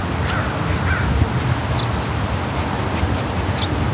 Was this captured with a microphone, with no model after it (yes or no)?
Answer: yes